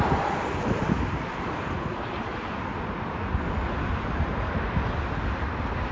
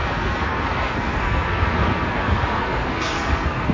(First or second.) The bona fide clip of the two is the first